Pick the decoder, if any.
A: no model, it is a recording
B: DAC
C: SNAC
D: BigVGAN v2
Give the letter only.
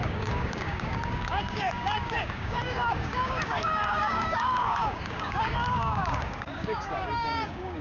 B